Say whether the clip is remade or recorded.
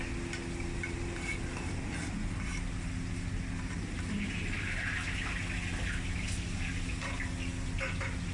recorded